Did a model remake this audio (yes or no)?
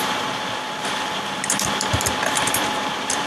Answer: yes